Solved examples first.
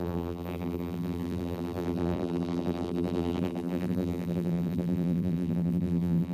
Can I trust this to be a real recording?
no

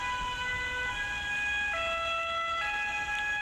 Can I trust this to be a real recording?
yes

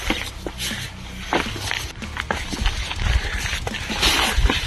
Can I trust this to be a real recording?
yes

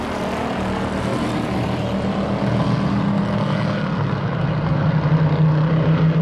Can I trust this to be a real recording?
yes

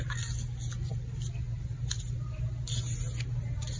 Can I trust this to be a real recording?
yes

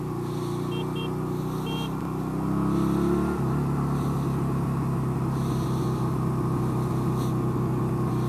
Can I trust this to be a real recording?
yes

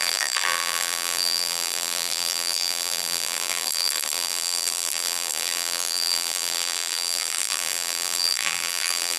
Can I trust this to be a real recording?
no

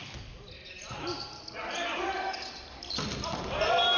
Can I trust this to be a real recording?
yes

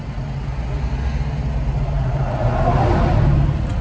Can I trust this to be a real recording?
yes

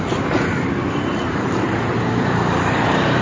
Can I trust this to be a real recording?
no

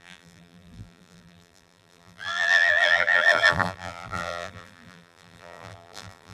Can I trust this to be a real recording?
no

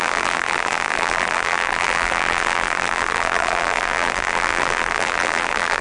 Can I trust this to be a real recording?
no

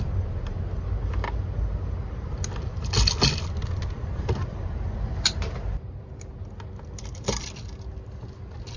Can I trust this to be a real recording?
yes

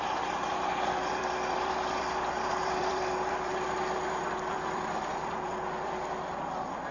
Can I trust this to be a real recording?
no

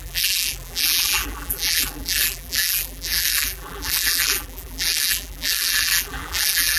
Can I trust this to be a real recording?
no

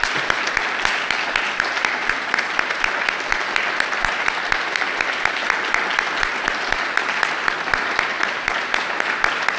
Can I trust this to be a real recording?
yes